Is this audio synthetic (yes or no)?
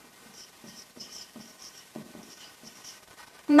yes